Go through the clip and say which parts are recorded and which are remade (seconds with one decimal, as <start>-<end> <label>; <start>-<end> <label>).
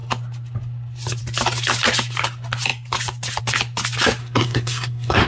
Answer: 0.0-4.2 recorded; 4.2-5.3 remade